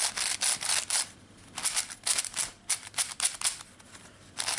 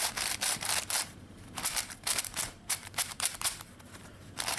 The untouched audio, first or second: first